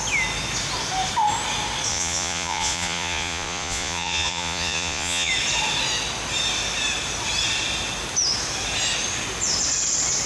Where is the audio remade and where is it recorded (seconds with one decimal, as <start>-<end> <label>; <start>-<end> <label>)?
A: 0.0-1.9 recorded; 1.9-5.3 remade; 5.3-10.3 recorded